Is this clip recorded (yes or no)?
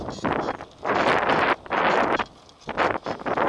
yes